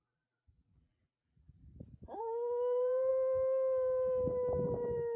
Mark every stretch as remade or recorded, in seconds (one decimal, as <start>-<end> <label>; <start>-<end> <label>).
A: 0.0-1.6 remade; 1.6-2.2 recorded; 2.2-3.1 remade; 3.1-5.2 recorded